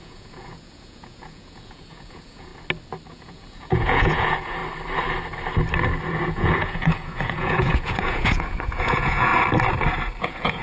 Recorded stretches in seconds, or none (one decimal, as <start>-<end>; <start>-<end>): 2.5-3.1; 4.6-6.3; 9.3-10.2